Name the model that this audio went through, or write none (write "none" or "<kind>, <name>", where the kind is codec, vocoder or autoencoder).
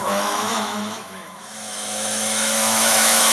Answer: autoencoder, DAC-VAE